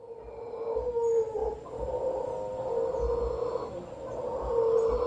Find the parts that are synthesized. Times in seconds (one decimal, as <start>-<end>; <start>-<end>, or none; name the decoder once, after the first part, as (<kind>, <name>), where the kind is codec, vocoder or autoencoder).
none